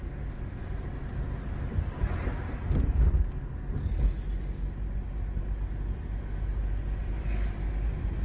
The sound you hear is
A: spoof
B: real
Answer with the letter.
B